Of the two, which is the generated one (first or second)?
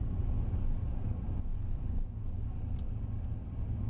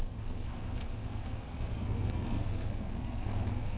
second